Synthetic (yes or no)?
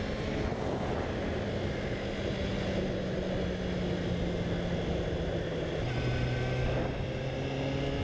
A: no